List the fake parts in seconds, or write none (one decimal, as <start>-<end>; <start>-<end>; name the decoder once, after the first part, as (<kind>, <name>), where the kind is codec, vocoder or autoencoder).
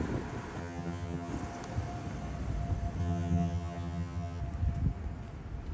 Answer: 0.6-1.3 (vocoder, HiFi-GAN); 3.0-4.4